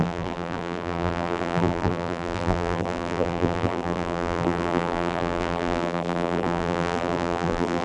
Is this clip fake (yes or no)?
yes